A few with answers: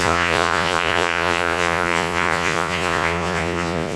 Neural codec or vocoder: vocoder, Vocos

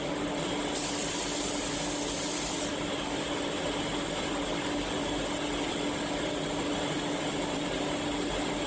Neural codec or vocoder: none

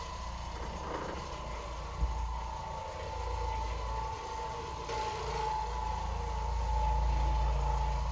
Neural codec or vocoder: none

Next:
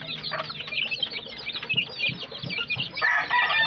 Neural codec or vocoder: none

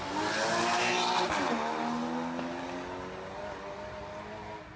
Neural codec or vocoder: none